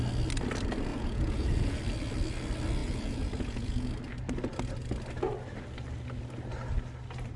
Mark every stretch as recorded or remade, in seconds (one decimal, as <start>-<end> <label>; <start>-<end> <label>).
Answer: 0.0-0.9 recorded; 0.9-1.8 remade; 1.8-2.8 recorded; 2.8-3.9 remade; 3.9-7.4 recorded